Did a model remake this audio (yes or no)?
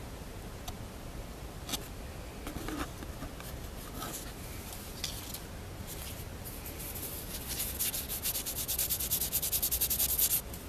no